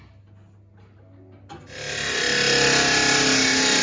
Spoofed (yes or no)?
no